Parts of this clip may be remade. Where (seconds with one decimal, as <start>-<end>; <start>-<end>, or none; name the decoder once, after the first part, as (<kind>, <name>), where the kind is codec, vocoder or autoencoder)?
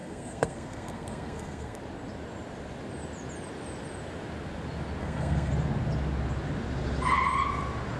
0.0-1.8 (codec, SNAC); 5.0-5.5